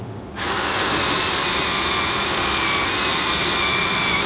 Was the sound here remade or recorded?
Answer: recorded